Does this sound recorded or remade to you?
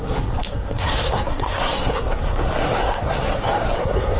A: remade